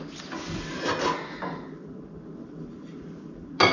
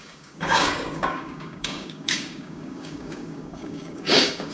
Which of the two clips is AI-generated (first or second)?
second